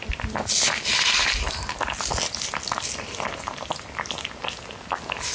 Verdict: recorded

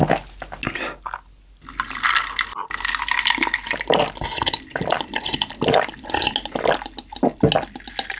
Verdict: recorded